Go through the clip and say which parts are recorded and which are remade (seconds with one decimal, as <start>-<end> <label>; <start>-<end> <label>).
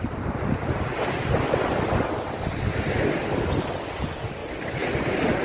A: 0.0-5.4 recorded